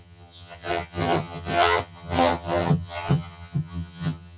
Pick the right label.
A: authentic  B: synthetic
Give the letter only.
B